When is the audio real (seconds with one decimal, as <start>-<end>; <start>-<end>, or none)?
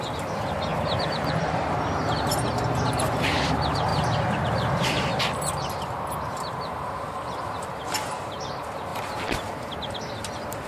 0.0-0.7; 1.7-8.9; 9.4-10.7